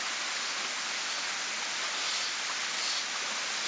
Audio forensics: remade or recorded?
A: recorded